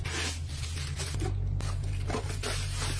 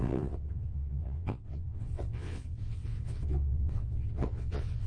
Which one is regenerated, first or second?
second